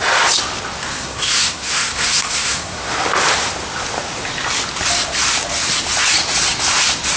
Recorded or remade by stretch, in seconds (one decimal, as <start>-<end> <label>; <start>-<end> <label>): 0.0-0.9 recorded; 0.9-2.9 remade; 2.9-7.2 recorded